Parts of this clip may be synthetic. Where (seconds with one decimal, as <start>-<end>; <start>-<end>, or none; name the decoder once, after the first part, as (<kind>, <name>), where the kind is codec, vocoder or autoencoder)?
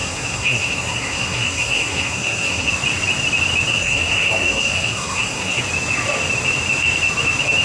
0.0-2.7 (codec, SNAC); 3.7-5.6